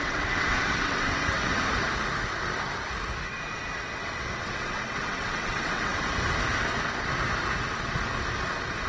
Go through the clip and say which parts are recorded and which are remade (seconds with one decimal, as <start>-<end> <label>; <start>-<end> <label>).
0.0-1.5 remade; 1.5-4.4 recorded; 4.4-5.9 remade; 5.9-8.9 recorded